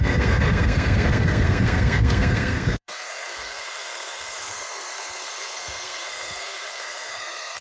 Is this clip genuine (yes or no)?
no